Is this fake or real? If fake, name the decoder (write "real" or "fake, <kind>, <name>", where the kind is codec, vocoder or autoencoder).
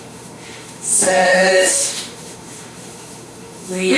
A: fake, autoencoder, DAC-VAE